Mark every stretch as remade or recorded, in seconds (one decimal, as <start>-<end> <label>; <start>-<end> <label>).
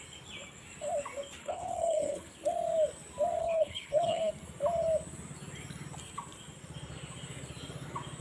0.0-1.4 recorded; 1.4-2.3 remade; 2.3-3.4 recorded; 3.4-4.3 remade; 4.3-8.2 recorded